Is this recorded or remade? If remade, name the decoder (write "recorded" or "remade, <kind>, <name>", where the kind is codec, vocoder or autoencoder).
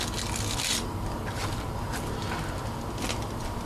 recorded